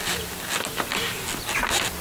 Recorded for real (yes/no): yes